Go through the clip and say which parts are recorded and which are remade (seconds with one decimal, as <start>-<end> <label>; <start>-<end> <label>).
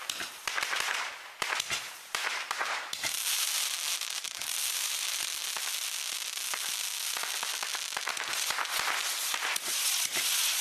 0.0-2.2 recorded; 2.2-5.5 remade; 5.5-10.6 recorded